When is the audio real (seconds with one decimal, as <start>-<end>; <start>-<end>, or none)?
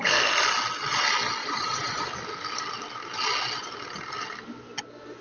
0.0-1.4; 2.0-5.2